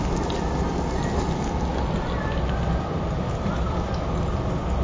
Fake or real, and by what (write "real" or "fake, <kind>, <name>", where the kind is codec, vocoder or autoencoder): real